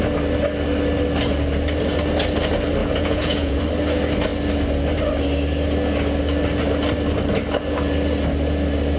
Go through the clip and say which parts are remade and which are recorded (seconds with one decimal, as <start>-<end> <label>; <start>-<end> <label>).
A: 0.0-2.8 recorded; 2.8-3.6 remade; 3.6-9.0 recorded